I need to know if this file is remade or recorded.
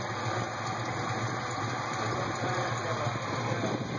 recorded